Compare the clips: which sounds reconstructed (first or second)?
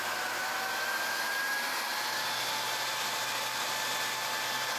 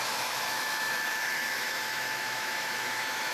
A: second